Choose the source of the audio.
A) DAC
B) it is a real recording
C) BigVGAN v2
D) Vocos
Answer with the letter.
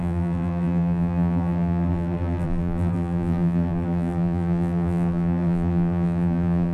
C